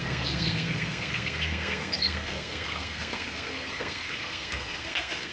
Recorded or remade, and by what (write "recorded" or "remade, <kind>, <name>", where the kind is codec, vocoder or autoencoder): remade, codec, SNAC